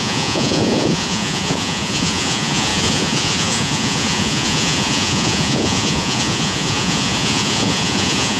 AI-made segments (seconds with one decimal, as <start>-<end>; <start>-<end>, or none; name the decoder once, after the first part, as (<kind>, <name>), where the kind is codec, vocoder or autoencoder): 0.0-8.4 (vocoder, Vocos)